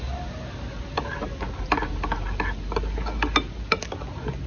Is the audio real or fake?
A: real